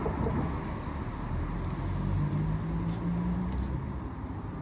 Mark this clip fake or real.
real